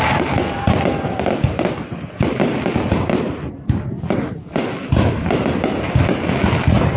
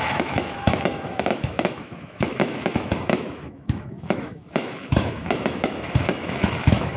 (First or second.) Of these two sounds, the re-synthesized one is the second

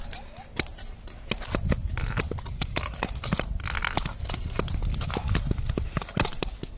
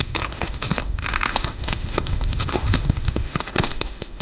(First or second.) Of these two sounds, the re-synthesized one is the second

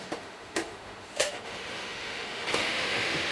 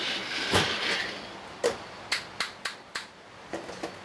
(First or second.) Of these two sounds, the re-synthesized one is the first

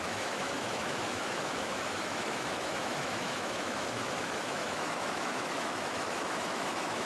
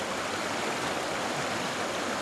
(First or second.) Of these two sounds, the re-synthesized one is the first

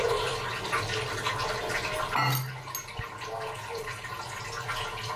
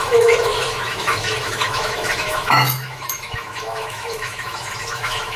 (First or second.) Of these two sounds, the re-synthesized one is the second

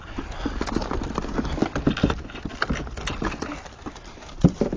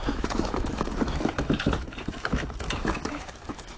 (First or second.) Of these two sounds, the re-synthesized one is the second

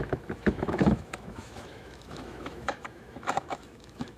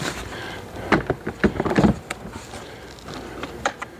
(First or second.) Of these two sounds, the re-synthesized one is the first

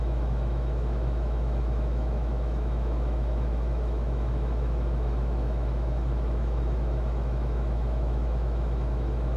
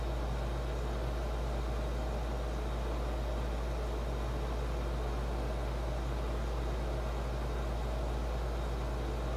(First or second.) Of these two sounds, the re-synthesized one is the first